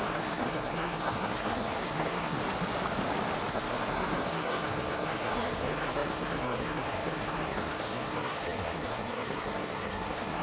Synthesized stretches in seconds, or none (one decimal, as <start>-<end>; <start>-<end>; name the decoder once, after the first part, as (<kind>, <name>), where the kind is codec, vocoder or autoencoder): 0.0-2.4 (codec, SNAC); 3.5-10.4